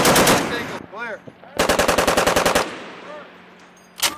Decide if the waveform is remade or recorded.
recorded